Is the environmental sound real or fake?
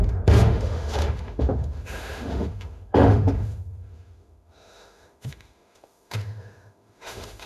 fake